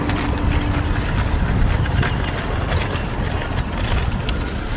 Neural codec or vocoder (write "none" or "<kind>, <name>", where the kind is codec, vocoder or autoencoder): none